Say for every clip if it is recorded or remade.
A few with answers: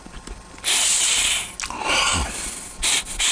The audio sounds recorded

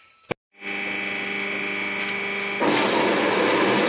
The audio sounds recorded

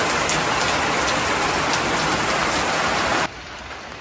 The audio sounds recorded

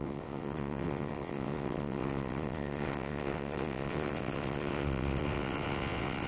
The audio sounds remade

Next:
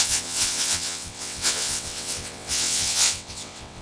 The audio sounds remade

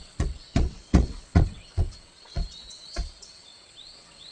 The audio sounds remade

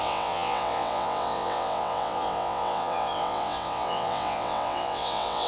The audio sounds remade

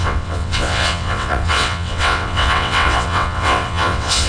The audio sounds remade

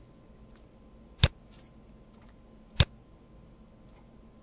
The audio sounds recorded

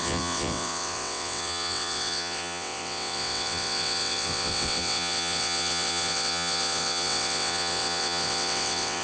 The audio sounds remade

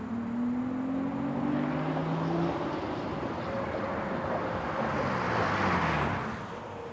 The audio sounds recorded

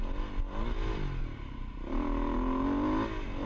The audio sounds recorded